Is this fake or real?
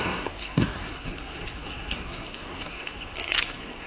fake